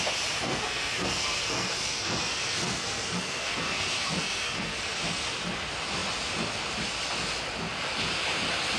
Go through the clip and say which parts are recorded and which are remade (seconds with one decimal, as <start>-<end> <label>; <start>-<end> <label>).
0.0-0.4 recorded; 0.4-4.9 remade; 4.9-8.8 recorded